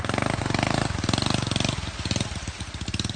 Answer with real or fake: real